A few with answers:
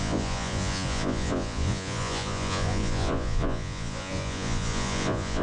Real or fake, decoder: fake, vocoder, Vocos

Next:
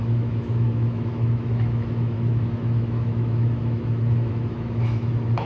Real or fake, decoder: fake, autoencoder, DAC-VAE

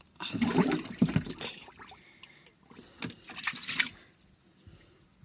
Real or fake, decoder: real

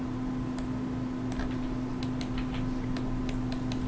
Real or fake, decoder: real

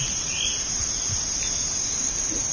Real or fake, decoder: real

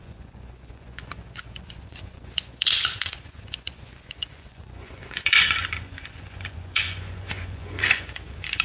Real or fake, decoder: fake, vocoder, Vocos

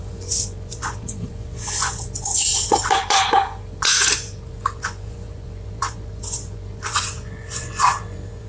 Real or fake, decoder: fake, vocoder, Vocos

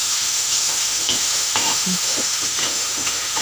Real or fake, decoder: fake, autoencoder, DAC-VAE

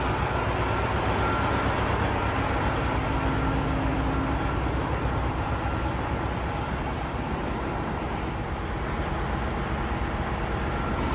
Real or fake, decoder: real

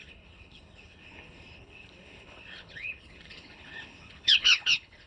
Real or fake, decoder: fake, codec, HILCodec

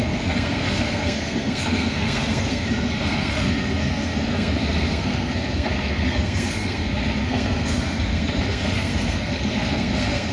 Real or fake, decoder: fake, codec, SNAC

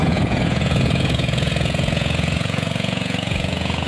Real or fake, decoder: fake, vocoder, Vocos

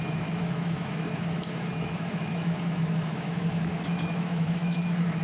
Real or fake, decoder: fake, autoencoder, DAC-VAE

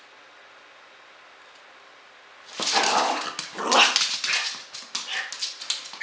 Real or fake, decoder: real